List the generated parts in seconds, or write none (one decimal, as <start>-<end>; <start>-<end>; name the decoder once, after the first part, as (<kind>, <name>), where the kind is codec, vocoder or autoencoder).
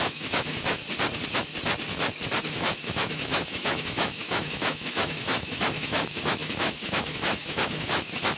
0.0-0.8 (autoencoder, DAC-VAE); 2.4-8.4